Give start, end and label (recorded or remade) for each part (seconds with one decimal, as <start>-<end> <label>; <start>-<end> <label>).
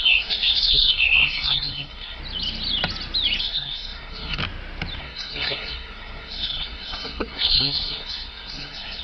0.0-2.2 remade; 2.2-3.4 recorded; 3.4-4.4 remade; 4.4-5.0 recorded; 5.0-9.0 remade